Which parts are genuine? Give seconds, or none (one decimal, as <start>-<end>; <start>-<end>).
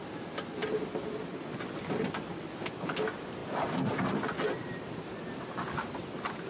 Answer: 0.0-6.5